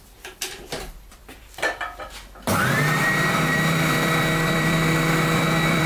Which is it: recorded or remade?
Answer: remade